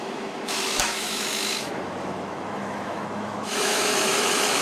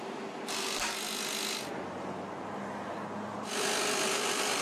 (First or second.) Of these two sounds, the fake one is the first